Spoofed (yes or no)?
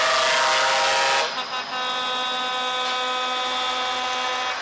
no